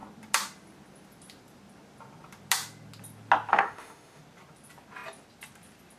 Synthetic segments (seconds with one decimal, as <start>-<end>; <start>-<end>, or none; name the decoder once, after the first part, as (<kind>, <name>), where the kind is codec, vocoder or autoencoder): 3.5-4.2 (autoencoder, DAC-VAE)